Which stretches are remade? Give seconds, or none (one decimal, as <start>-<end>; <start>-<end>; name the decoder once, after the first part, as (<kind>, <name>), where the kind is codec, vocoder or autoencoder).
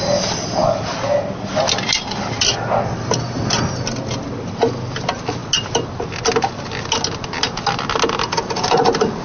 none